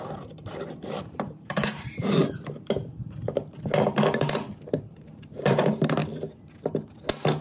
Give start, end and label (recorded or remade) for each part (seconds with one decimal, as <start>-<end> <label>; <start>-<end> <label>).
0.0-2.2 remade; 2.2-4.9 recorded; 4.9-6.0 remade; 6.0-7.4 recorded